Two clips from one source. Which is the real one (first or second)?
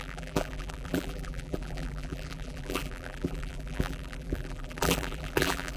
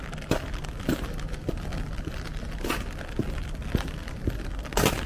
second